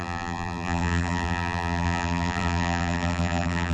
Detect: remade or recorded remade